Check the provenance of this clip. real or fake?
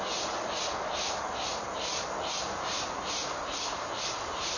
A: real